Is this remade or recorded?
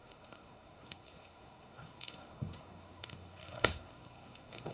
remade